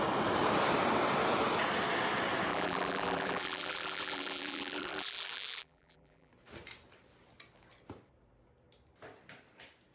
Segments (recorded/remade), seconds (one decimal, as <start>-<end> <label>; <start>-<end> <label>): 0.0-2.5 recorded; 2.5-6.3 remade; 6.3-9.9 recorded